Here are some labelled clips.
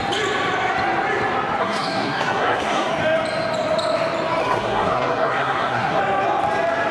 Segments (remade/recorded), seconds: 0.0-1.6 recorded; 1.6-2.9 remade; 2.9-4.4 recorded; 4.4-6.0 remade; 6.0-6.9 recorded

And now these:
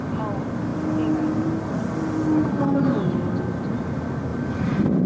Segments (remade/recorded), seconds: 0.0-4.3 recorded; 4.3-5.1 remade

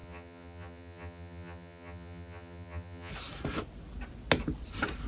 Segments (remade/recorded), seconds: 0.0-3.1 remade; 3.1-5.1 recorded

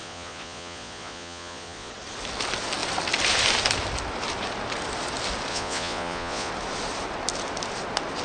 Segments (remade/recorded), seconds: 0.0-1.9 remade; 1.9-5.5 recorded; 5.5-6.5 remade; 6.5-8.2 recorded

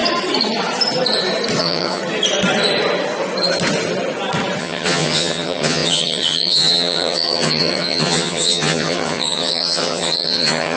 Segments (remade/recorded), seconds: 0.0-1.6 recorded; 1.6-2.0 remade; 2.0-4.6 recorded; 4.6-10.8 remade

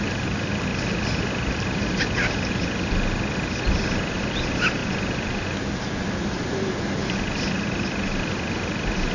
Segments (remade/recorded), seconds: 0.0-9.1 recorded

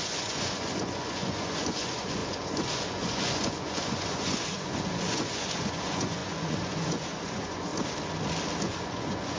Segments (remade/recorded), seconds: 0.0-7.7 remade; 7.7-8.6 recorded; 8.6-9.4 remade